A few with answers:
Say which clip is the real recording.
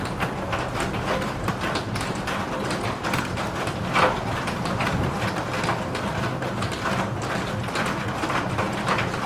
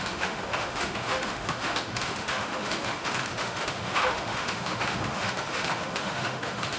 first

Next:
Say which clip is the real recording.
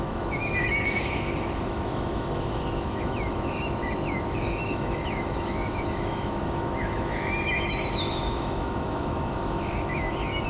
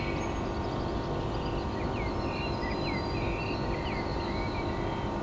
second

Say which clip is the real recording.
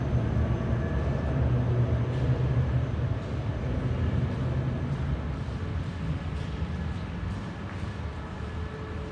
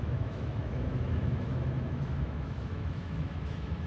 first